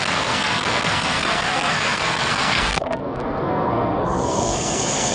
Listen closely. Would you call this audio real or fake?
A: fake